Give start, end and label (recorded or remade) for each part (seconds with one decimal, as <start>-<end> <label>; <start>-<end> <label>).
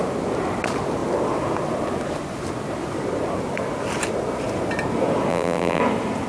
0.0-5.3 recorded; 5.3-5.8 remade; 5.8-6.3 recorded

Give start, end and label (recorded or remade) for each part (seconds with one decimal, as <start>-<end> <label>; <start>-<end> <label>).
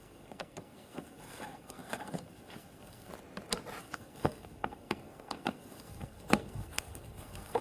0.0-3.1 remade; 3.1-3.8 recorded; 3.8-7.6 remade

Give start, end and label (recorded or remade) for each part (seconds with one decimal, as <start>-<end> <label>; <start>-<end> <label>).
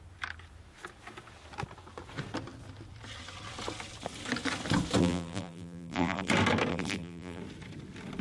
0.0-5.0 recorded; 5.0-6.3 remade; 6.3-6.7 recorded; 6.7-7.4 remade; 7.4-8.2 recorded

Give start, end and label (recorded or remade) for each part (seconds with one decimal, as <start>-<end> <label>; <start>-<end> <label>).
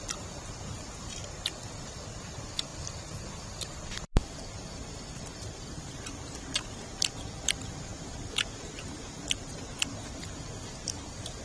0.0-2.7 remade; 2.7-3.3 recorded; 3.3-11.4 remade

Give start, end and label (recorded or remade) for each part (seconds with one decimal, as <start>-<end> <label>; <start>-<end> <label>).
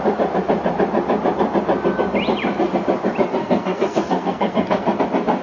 0.0-3.4 recorded; 3.4-5.0 remade; 5.0-5.4 recorded